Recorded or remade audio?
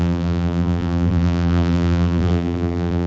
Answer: remade